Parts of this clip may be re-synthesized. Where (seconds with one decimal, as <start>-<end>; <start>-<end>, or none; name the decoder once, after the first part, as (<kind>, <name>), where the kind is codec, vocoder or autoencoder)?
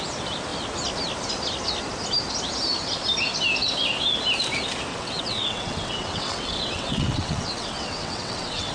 4.9-8.7 (vocoder, WaveNeXt)